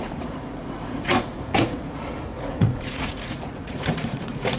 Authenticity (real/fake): fake